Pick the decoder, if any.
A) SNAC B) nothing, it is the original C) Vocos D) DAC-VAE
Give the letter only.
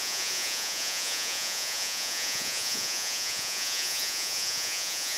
C